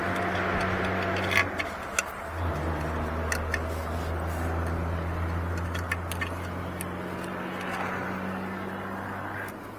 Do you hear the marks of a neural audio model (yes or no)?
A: no